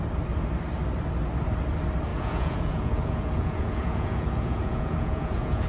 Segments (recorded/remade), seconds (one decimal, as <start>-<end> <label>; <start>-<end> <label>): 0.0-2.1 recorded; 2.1-5.7 remade

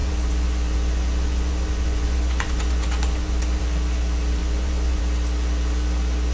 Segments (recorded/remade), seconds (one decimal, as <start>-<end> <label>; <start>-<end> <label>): 0.0-3.6 remade; 3.6-4.4 recorded; 4.4-5.0 remade; 5.0-6.3 recorded

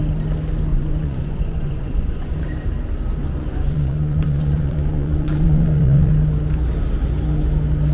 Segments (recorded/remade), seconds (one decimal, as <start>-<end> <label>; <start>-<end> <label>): 0.0-0.7 recorded; 0.7-2.4 remade; 2.4-3.2 recorded; 3.2-6.1 remade; 6.1-7.9 recorded